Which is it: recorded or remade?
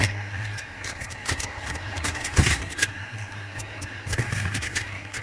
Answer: remade